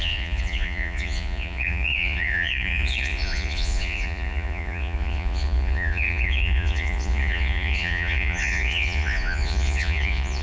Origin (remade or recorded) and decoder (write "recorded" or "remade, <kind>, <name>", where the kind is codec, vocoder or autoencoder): remade, vocoder, Vocos